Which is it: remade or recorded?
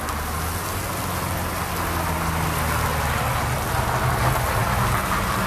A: recorded